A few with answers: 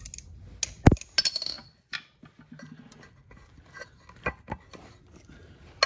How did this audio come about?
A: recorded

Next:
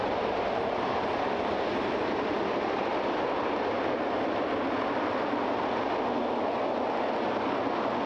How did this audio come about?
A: recorded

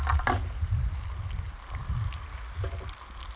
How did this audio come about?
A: recorded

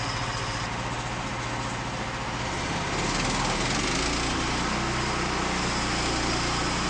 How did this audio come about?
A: recorded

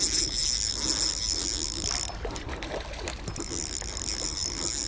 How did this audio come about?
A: recorded